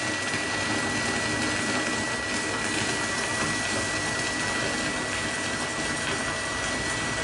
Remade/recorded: recorded